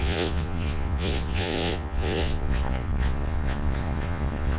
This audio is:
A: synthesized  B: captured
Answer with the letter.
A